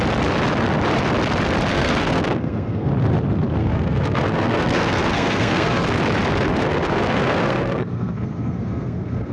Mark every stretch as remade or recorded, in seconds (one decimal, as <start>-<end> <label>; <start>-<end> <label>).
0.0-1.7 recorded; 1.7-2.9 remade; 2.9-3.6 recorded; 3.6-6.0 remade; 6.0-6.5 recorded; 6.5-9.3 remade